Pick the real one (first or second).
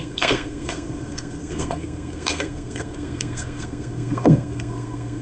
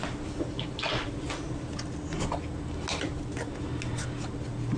second